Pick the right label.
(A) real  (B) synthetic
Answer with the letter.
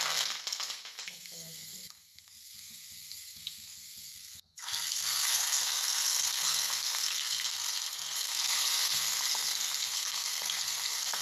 B